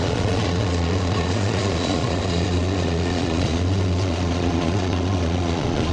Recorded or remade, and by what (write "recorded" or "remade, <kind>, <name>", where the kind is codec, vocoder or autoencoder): remade, vocoder, Vocos